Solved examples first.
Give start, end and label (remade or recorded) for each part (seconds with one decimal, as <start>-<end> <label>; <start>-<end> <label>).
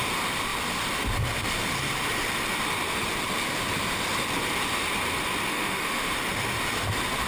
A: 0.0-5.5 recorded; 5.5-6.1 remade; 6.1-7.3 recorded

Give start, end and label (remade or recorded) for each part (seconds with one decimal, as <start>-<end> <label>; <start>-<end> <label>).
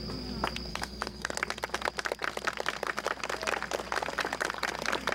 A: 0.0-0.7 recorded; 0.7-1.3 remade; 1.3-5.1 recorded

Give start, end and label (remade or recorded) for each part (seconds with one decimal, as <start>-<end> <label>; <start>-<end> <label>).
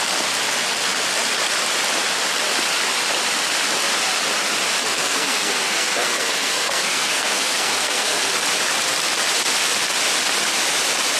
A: 0.0-4.8 recorded; 4.8-8.2 remade; 8.2-11.2 recorded